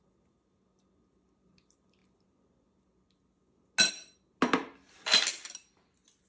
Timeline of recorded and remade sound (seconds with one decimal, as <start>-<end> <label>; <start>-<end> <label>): 0.0-6.3 recorded